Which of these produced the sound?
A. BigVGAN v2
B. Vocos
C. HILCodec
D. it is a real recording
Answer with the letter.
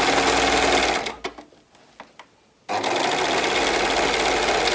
D